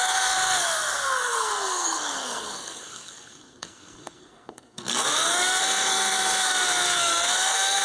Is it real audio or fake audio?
fake